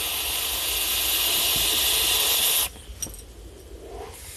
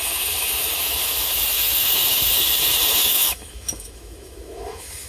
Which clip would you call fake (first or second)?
second